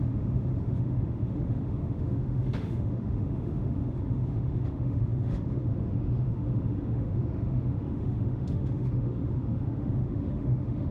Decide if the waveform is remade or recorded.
remade